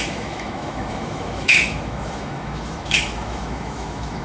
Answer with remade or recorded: remade